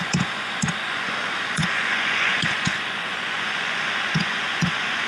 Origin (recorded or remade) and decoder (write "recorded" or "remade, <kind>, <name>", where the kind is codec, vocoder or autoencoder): remade, vocoder, Vocos